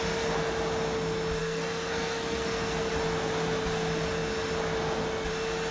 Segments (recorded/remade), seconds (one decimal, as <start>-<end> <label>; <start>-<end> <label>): 0.0-1.4 recorded; 1.4-2.9 remade; 2.9-5.7 recorded